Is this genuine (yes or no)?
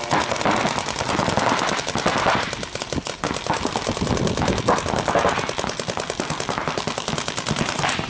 yes